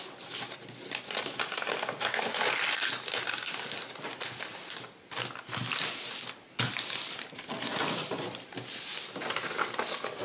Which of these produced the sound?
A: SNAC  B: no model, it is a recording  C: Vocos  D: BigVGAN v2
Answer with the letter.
B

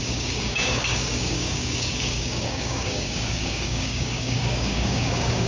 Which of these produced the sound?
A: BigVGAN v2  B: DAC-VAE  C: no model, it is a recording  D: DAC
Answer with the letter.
D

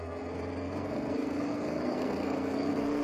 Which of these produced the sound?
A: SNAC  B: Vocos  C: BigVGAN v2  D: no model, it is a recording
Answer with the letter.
A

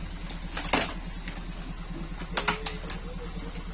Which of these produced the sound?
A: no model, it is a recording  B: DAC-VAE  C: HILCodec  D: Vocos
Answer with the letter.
A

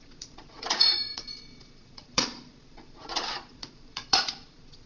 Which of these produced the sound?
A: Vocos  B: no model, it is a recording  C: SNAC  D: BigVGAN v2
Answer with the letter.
A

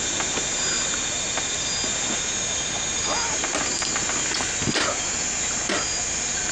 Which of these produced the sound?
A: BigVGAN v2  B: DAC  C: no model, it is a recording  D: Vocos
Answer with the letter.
C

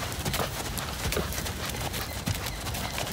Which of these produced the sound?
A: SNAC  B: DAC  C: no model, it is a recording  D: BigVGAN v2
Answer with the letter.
C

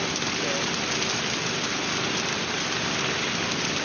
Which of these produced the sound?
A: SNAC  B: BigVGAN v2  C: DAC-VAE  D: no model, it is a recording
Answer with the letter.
D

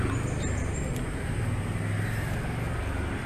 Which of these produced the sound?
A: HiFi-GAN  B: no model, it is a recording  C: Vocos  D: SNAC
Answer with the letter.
B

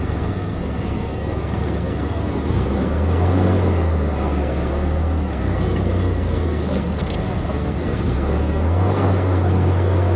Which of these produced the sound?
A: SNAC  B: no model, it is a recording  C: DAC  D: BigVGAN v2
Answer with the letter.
A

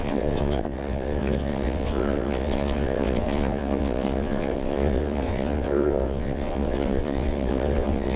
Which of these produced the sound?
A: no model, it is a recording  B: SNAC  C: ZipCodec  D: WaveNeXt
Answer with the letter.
D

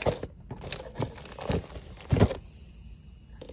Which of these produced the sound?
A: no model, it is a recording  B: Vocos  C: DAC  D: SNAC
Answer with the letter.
A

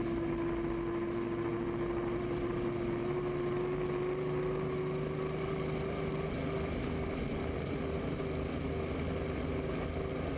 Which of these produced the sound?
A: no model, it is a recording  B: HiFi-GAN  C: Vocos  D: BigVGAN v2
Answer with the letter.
A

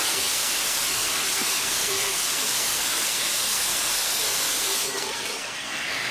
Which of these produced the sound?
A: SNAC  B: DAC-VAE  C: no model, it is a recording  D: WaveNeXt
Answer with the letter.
A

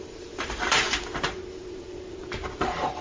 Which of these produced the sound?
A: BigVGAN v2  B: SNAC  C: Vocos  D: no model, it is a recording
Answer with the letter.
A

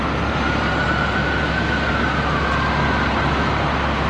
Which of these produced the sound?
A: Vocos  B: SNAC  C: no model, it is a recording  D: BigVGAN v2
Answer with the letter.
C